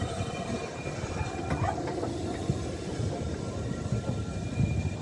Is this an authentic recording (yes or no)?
yes